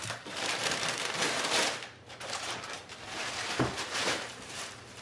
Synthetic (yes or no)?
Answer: yes